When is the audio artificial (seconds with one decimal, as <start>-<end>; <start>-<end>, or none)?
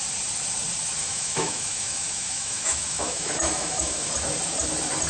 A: 1.0-4.1